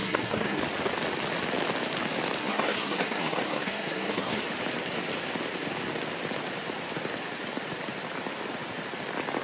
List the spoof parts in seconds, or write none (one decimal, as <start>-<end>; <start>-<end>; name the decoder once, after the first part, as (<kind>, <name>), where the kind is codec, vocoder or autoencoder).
0.0-0.6 (codec, SNAC); 2.4-4.4